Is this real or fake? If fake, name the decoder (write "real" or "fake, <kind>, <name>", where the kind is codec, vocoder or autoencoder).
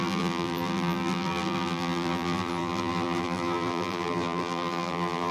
fake, vocoder, BigVGAN v2